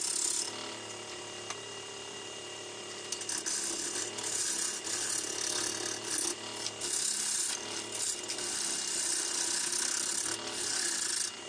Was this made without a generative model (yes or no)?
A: yes